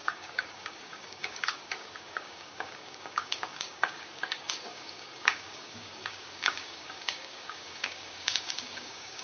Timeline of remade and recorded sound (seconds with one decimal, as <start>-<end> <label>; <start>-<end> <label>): 0.0-9.2 remade